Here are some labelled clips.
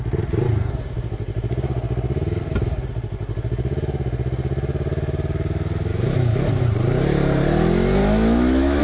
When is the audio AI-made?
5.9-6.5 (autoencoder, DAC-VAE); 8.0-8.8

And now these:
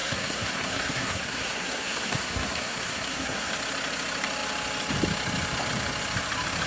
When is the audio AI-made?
0.0-3.5 (codec, SNAC)

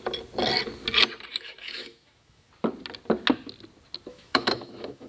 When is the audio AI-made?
1.3-2.5 (autoencoder, DAC-VAE); 4.1-5.1

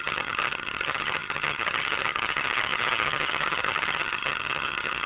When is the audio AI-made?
0.0-5.1 (vocoder, HiFi-GAN)

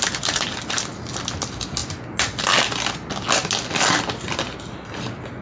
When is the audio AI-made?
none

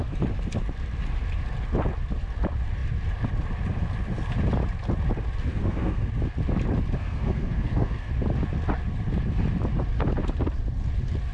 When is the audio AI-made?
5.5-6.1 (codec, SNAC); 7.0-8.1

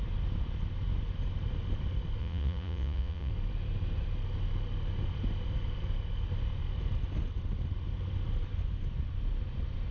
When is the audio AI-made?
2.2-3.3 (vocoder, Vocos)

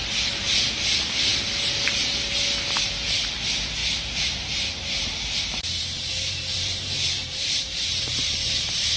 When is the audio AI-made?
3.8-9.0 (vocoder, BigVGAN v2)